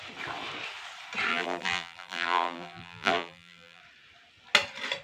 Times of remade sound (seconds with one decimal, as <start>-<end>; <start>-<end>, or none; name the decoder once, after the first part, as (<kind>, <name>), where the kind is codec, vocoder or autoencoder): 1.3-3.8 (vocoder, BigVGAN v2)